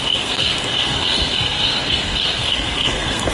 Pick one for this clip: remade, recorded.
remade